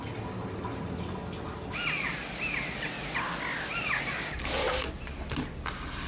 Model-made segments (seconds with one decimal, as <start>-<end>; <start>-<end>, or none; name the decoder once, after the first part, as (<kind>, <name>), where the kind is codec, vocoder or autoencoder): none